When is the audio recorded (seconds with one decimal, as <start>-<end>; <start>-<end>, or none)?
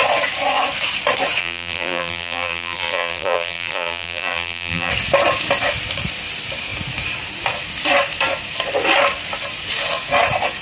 0.0-1.4; 4.9-10.6